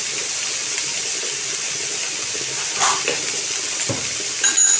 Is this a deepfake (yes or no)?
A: no